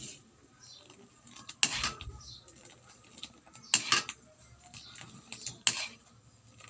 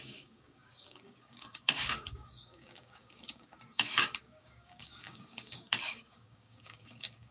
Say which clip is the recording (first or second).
first